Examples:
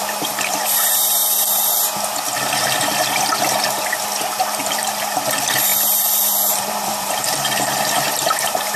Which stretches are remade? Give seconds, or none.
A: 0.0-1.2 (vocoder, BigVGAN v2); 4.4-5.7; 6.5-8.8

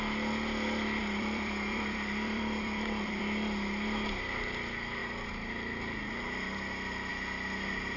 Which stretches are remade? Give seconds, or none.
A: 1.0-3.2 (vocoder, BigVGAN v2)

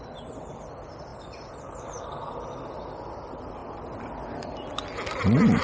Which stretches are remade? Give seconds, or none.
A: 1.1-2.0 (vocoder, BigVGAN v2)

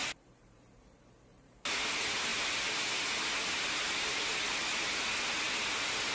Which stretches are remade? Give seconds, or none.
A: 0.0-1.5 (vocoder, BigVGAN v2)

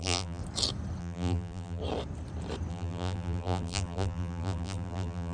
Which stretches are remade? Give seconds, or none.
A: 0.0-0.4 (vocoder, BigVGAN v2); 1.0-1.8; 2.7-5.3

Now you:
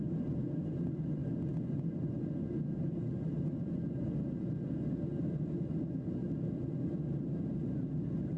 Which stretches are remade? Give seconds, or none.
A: none

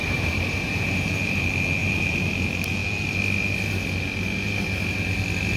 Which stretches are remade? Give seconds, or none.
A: 0.0-1.4 (vocoder, BigVGAN v2); 1.8-2.3

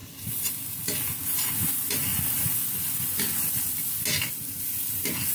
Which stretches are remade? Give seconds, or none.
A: 0.0-0.6 (vocoder, BigVGAN v2)